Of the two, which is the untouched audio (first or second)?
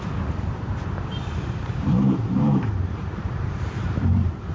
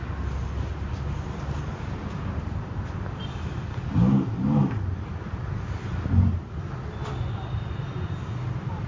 second